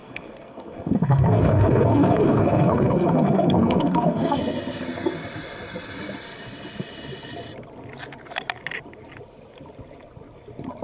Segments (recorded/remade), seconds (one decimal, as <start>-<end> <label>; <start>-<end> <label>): 0.0-4.4 remade; 4.4-10.8 recorded